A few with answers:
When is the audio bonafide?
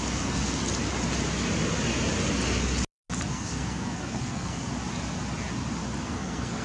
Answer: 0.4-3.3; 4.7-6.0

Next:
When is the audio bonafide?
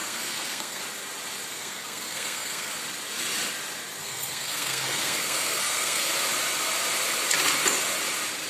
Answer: 0.8-1.5; 2.7-4.0; 6.1-8.5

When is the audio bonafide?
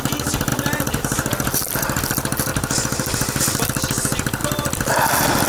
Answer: 0.0-5.5